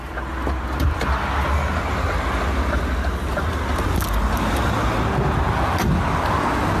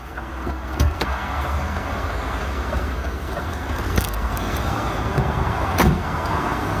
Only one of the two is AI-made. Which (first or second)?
second